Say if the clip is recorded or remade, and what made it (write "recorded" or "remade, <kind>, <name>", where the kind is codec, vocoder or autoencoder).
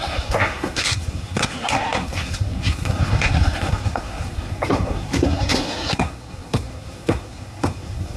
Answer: remade, codec, SNAC